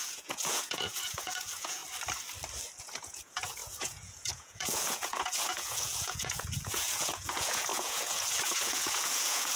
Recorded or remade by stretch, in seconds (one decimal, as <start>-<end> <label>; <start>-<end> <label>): 0.0-1.8 remade; 1.8-2.8 recorded; 2.8-9.6 remade